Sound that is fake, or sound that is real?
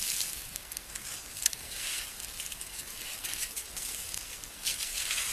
fake